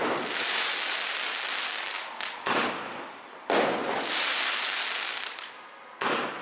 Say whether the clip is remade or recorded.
recorded